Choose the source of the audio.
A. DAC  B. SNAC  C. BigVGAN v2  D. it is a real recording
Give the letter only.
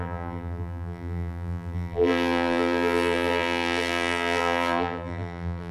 C